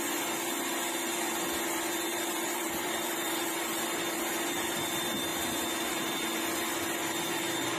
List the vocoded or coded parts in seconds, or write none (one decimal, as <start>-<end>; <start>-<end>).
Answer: 2.1-3.8